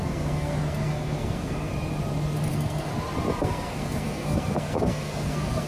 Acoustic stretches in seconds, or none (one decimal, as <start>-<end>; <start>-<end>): 1.7-2.5; 2.9-3.4